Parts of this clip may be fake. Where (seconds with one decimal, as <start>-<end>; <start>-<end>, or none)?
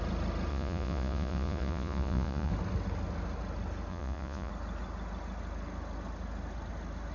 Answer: 0.5-2.5; 3.9-4.5